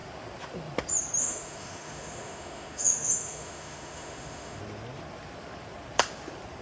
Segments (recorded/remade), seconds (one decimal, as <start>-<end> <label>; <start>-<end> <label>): 0.0-1.2 recorded; 1.2-4.6 remade; 4.6-6.6 recorded